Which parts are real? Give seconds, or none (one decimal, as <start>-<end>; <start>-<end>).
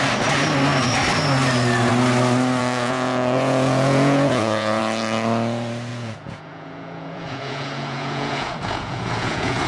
0.0-2.6; 4.8-5.9